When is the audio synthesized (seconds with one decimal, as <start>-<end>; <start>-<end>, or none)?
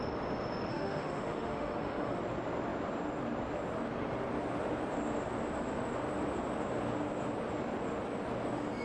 0.7-2.2